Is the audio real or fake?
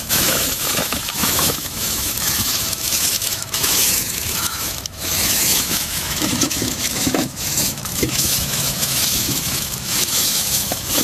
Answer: fake